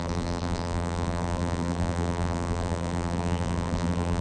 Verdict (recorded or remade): remade